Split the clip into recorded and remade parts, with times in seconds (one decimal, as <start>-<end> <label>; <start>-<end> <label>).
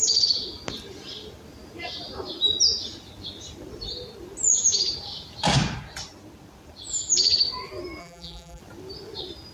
0.0-8.0 recorded; 8.0-8.6 remade; 8.6-9.5 recorded